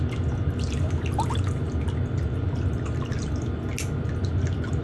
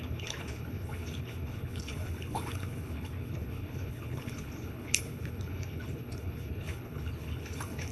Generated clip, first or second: second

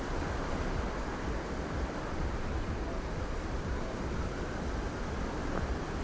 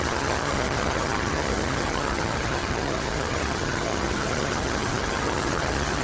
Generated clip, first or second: second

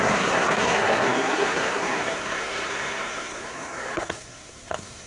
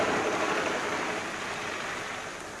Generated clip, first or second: first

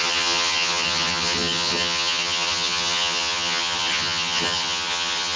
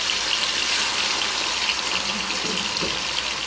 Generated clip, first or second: first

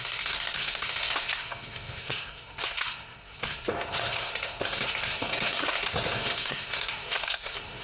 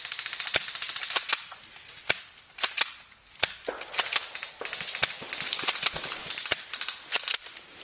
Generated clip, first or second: first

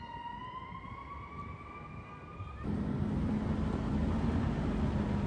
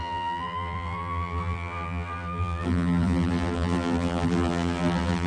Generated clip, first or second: second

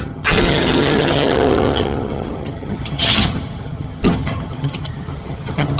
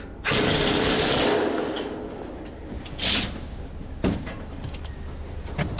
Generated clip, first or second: first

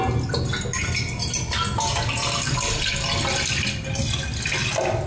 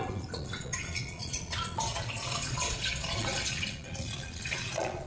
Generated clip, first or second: second